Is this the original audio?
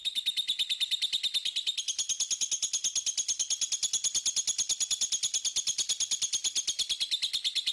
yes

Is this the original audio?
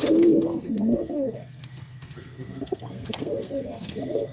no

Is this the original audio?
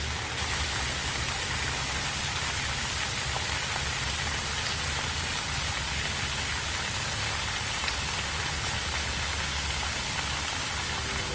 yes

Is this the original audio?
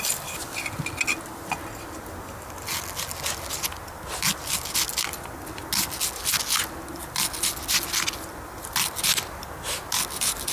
yes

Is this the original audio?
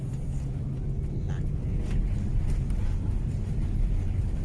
yes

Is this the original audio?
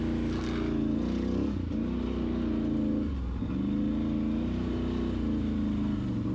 yes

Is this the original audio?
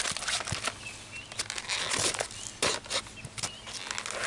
yes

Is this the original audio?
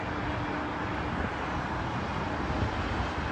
yes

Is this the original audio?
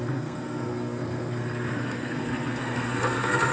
no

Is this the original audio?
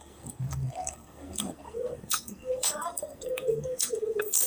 no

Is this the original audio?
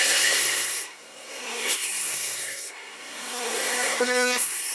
no